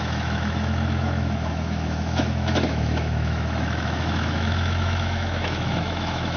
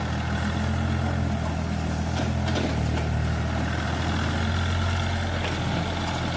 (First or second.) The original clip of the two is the second